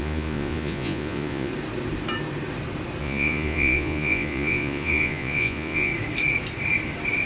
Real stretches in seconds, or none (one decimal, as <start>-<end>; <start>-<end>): 1.5-3.0; 5.9-7.3